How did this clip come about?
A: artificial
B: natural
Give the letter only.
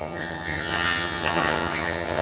A